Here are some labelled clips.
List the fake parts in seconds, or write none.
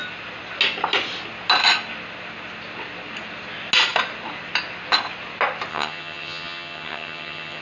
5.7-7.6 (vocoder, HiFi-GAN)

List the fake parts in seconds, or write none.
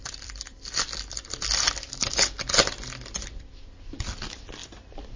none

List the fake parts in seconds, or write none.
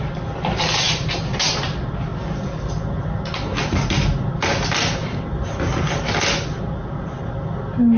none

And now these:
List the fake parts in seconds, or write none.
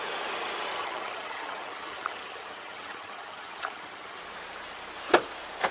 0.8-4.2 (vocoder, HiFi-GAN)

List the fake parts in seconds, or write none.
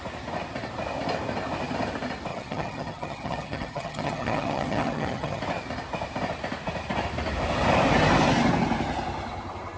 2.3-5.4 (vocoder, HiFi-GAN)